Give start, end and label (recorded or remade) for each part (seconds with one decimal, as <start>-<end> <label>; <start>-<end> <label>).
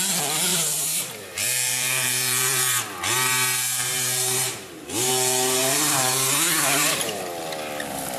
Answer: 0.0-0.5 recorded; 0.5-5.1 remade; 5.1-5.6 recorded; 5.6-7.2 remade; 7.2-8.2 recorded